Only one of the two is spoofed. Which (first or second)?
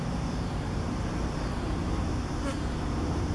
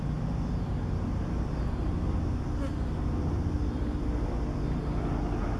first